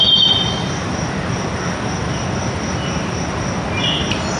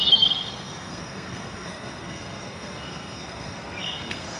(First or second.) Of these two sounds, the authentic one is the first